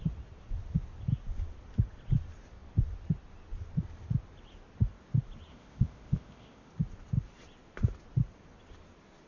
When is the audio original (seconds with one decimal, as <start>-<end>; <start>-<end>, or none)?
0.0-5.5; 6.7-9.3